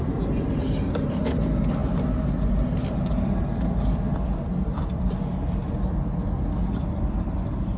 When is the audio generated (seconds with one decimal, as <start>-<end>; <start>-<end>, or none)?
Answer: none